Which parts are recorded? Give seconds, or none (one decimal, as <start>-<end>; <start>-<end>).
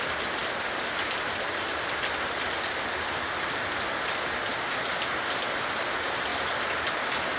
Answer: 0.0-7.4